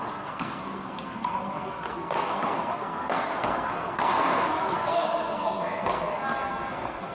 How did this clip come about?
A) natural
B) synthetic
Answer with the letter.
B